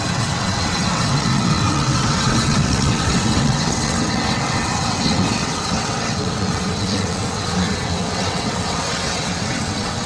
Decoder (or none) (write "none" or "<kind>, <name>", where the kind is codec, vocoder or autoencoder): vocoder, WaveNeXt